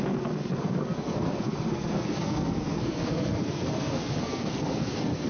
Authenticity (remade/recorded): remade